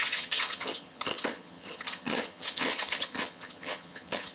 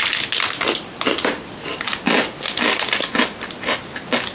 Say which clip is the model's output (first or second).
first